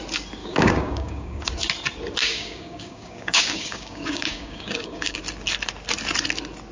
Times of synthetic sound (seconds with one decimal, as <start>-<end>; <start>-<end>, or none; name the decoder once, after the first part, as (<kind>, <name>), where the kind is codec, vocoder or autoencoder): 0.4-1.5 (codec, DAC); 2.2-5.2